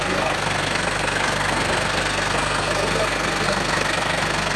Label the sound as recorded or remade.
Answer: remade